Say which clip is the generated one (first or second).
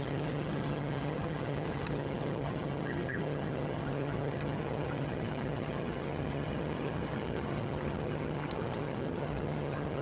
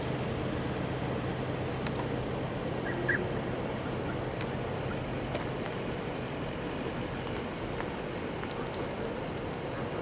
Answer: first